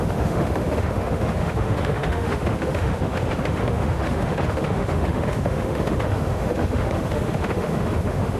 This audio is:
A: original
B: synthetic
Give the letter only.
B